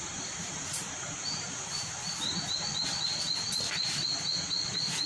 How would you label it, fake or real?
real